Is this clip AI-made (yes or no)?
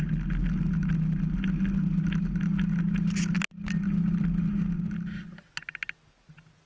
no